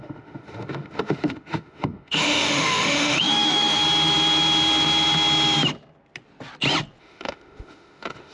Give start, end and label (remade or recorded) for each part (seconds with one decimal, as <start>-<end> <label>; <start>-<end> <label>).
0.0-3.8 remade; 3.8-7.0 recorded; 7.0-8.3 remade